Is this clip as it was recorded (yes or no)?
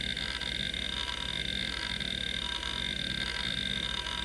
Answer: yes